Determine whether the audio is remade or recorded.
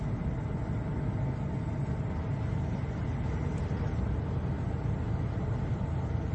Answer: recorded